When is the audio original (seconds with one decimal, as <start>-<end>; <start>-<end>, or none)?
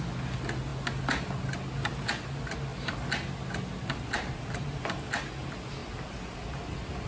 0.0-7.1